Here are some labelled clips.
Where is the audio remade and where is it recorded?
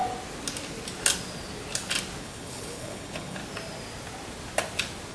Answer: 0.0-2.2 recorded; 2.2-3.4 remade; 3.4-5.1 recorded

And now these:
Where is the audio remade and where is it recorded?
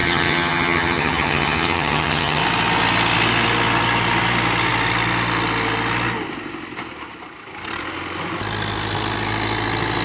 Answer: 0.0-2.4 remade; 2.4-10.0 recorded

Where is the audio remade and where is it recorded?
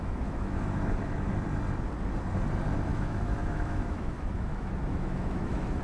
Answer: 0.0-1.3 remade; 1.3-2.9 recorded; 2.9-5.8 remade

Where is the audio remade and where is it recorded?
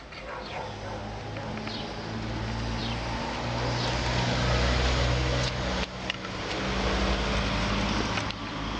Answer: 0.0-8.8 recorded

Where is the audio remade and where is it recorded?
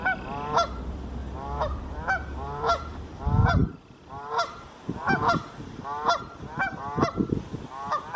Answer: 0.0-1.2 recorded; 1.2-2.8 remade; 2.8-8.2 recorded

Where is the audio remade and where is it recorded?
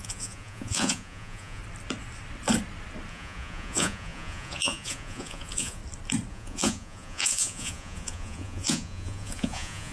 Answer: 0.0-1.6 remade; 1.6-3.1 recorded; 3.1-5.8 remade; 5.8-6.3 recorded; 6.3-9.9 remade